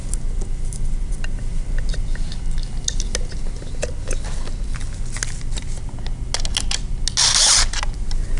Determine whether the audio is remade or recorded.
recorded